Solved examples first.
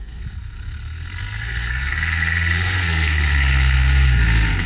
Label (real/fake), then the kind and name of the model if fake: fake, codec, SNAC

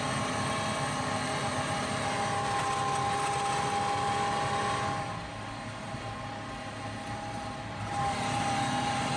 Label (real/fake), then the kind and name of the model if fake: real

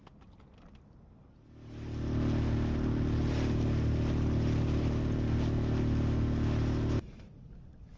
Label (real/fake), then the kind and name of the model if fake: real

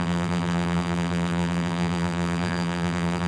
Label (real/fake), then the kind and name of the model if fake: fake, vocoder, BigVGAN v2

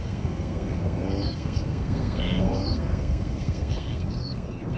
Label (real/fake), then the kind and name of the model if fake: fake, codec, SNAC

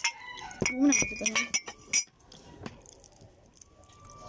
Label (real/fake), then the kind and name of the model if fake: real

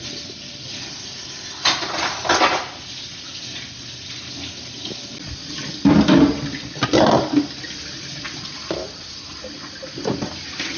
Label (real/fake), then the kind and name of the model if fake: real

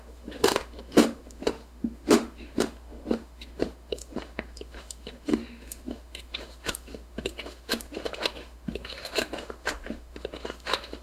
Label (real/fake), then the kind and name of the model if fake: fake, autoencoder, DAC-VAE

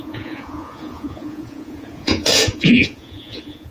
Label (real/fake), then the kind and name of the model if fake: fake, vocoder, Vocos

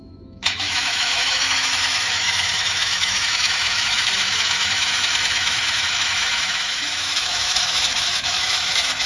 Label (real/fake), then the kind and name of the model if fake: fake, autoencoder, DAC-VAE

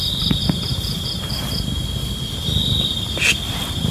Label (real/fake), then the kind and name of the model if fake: real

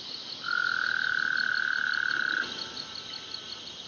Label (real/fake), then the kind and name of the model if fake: real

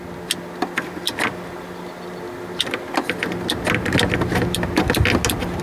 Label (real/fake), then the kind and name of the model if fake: real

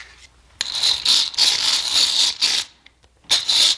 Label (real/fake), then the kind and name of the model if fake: real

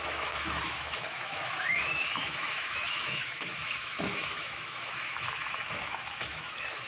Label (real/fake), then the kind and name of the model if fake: fake, autoencoder, DAC-VAE